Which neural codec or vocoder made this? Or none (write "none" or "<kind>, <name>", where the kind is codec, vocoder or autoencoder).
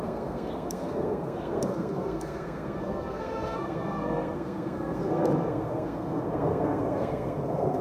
codec, SNAC